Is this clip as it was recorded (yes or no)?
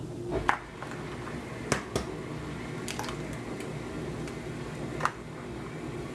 yes